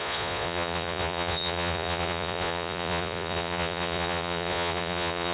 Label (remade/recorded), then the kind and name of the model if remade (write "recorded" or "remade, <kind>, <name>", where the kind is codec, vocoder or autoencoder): remade, vocoder, Vocos